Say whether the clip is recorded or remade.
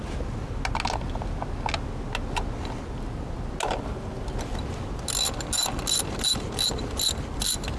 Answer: recorded